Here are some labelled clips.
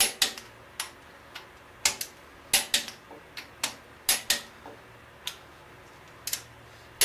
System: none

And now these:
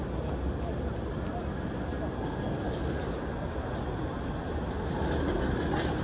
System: none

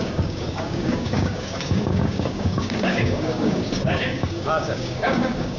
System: codec, DAC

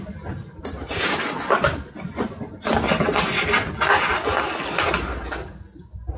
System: none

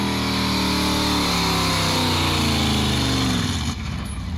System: none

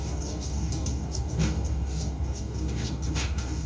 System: codec, DAC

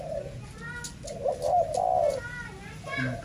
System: none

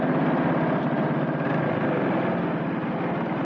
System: none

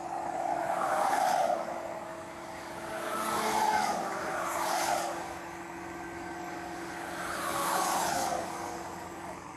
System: codec, DAC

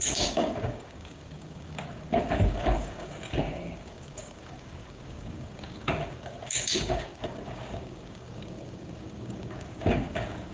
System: codec, DAC